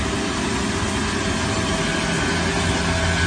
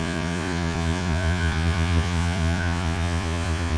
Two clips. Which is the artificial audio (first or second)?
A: second